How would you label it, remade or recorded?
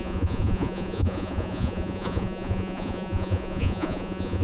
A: remade